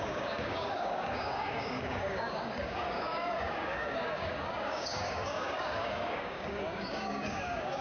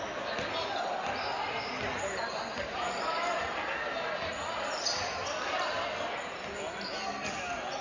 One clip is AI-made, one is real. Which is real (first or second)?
second